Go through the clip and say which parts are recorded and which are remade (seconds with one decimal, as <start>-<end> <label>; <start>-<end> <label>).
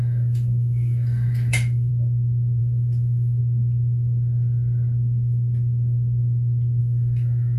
0.0-1.9 remade; 1.9-2.6 recorded; 2.6-3.4 remade; 3.4-6.8 recorded; 6.8-7.6 remade